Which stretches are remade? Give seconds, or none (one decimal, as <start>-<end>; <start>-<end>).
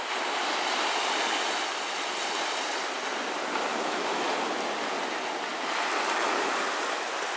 3.7-4.3